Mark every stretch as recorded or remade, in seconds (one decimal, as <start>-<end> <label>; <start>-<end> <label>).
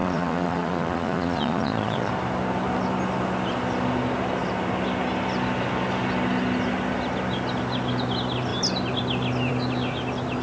0.0-2.1 remade; 2.1-10.4 recorded